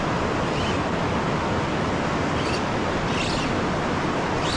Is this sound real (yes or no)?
yes